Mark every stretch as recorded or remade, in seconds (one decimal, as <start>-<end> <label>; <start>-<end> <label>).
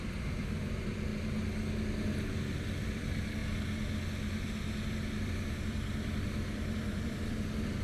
0.0-1.1 remade; 1.1-2.3 recorded; 2.3-3.4 remade; 3.4-5.2 recorded; 5.2-7.8 remade